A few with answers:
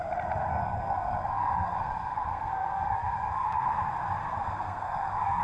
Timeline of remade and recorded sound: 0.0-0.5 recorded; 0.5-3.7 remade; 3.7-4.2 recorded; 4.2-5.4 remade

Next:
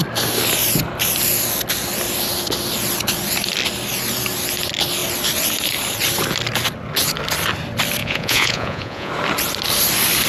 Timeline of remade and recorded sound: 0.0-8.0 recorded; 8.0-9.1 remade; 9.1-10.3 recorded

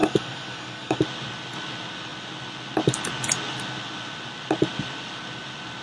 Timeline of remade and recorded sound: 0.0-1.0 remade; 1.0-5.8 recorded

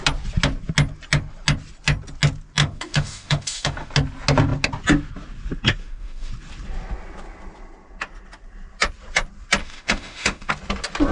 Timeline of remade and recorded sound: 0.0-2.6 recorded; 2.6-3.9 remade; 3.9-5.8 recorded; 5.8-6.3 remade; 6.3-9.6 recorded; 9.6-10.5 remade; 10.5-11.1 recorded

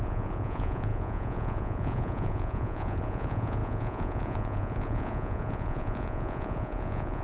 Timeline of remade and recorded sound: 0.0-7.2 remade